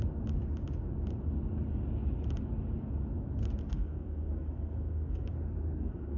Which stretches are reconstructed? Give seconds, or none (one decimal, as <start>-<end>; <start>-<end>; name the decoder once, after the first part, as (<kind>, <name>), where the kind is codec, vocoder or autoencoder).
3.7-5.3 (codec, SNAC); 5.8-6.2